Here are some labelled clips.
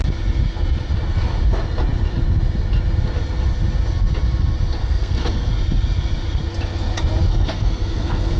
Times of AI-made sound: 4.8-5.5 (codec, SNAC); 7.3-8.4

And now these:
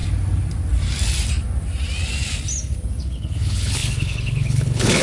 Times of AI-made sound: 3.0-5.0 (codec, HILCodec)

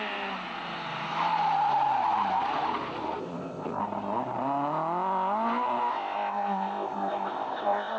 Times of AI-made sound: 3.2-3.8 (codec, ZipCodec); 5.9-8.0

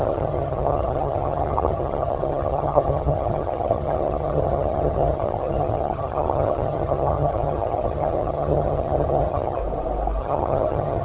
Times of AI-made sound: 0.0-9.6 (vocoder, HiFi-GAN); 10.2-11.0

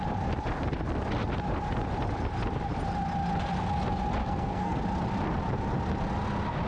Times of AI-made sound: 4.2-4.8 (codec, SNAC)